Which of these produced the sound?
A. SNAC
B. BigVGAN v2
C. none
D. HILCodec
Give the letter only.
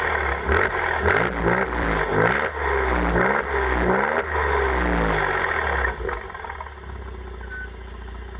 C